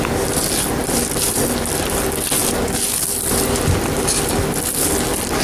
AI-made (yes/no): no